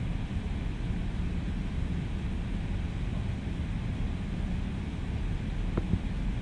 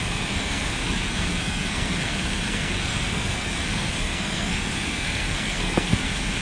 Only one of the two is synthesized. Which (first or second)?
second